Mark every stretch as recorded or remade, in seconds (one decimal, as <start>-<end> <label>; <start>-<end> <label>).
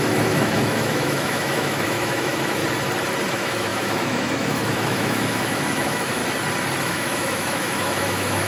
0.0-2.6 remade; 2.6-3.3 recorded; 3.3-6.2 remade; 6.2-6.8 recorded; 6.8-8.5 remade